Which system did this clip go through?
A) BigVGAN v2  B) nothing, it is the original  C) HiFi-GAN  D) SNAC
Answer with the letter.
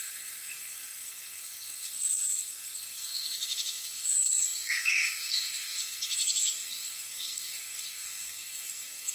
D